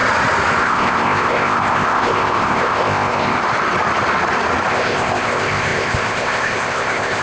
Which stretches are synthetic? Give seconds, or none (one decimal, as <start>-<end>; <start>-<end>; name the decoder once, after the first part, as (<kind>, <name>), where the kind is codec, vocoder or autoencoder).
0.6-3.4 (codec, ZipCodec); 4.7-7.2